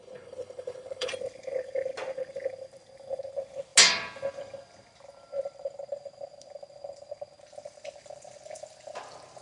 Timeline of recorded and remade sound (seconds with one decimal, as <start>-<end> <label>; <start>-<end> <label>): 0.0-1.1 remade; 1.1-9.4 recorded